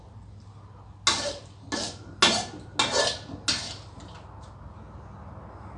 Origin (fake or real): real